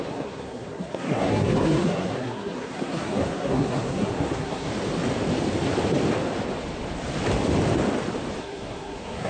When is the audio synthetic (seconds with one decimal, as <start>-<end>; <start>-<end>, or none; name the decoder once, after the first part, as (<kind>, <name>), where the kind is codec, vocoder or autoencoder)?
0.0-4.7 (codec, SNAC); 8.4-9.3